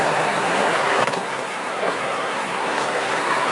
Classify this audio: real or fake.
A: fake